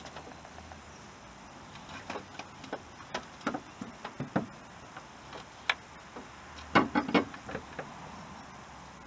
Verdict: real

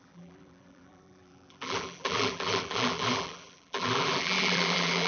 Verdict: fake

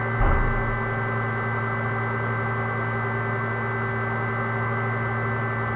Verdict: real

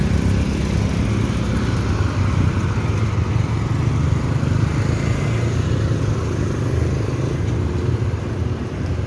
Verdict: real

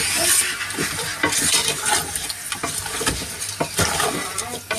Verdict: real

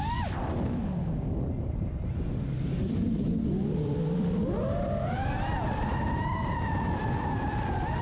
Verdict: fake